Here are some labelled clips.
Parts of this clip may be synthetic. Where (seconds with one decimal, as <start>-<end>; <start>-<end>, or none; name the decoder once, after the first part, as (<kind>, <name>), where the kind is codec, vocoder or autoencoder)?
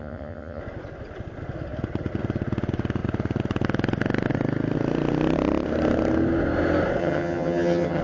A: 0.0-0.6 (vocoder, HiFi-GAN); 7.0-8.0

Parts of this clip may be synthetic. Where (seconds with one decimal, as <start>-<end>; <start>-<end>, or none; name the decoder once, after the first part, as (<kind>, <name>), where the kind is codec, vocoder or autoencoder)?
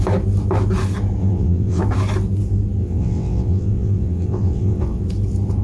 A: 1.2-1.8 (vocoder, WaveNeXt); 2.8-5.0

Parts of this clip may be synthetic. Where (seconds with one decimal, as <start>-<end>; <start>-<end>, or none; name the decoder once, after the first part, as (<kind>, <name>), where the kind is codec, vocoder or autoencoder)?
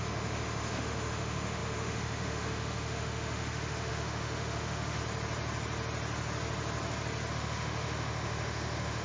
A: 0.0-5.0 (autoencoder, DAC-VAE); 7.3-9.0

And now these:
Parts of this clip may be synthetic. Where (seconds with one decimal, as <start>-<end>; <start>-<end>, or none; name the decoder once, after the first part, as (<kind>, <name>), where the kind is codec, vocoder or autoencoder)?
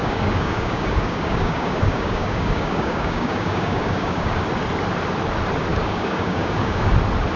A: 0.0-4.4 (codec, DAC); 5.7-6.9